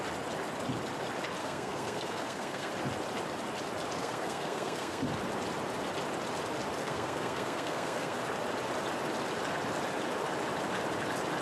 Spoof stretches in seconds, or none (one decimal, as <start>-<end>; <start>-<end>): 1.4-2.7; 4.0-5.0; 6.8-8.2